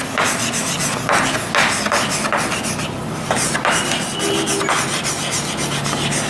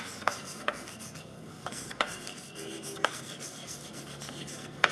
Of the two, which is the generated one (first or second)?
second